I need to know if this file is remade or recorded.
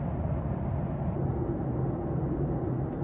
recorded